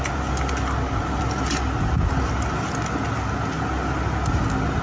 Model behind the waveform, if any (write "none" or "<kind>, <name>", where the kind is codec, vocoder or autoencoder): none